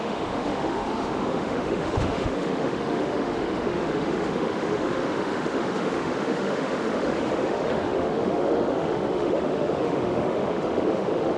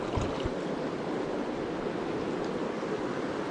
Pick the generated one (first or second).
first